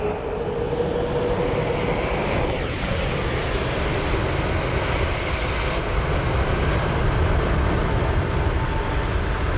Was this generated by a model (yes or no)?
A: no